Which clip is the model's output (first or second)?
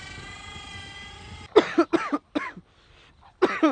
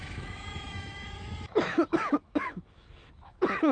second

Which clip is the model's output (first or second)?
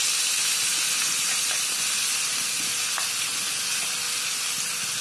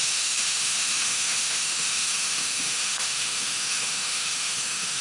second